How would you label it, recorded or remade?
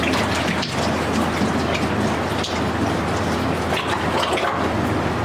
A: recorded